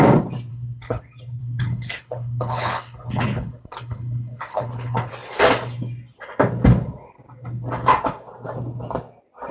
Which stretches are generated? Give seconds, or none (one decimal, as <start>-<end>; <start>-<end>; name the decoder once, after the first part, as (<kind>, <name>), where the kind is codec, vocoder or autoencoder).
0.5-1.0 (codec, HILCodec); 1.4-5.1